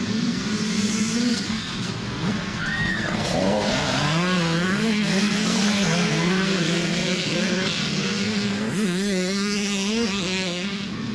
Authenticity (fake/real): fake